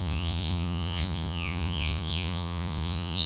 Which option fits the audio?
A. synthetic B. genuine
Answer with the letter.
A